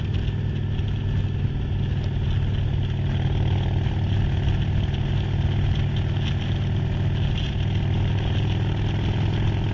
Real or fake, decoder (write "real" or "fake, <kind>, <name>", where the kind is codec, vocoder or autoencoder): real